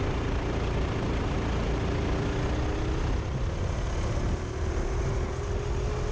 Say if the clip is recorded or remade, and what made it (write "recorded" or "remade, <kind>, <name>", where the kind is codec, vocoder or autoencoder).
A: recorded